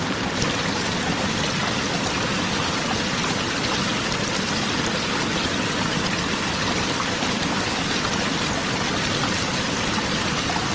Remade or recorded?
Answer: recorded